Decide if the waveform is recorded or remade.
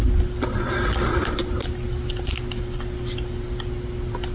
recorded